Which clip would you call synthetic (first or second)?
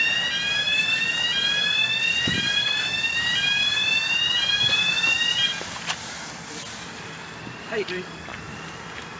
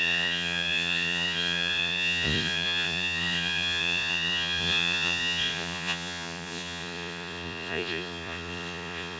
second